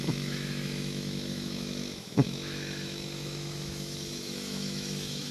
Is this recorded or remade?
remade